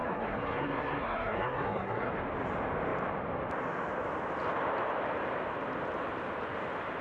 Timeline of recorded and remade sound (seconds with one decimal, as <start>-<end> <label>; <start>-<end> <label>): 0.0-2.1 remade; 2.1-7.0 recorded